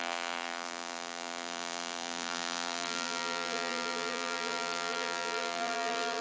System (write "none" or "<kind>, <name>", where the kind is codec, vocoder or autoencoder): vocoder, BigVGAN v2